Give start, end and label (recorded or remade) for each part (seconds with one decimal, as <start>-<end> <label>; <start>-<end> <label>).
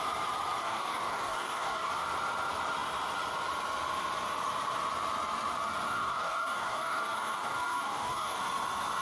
0.0-0.6 recorded; 0.6-1.9 remade; 1.9-5.9 recorded; 5.9-8.4 remade; 8.4-9.0 recorded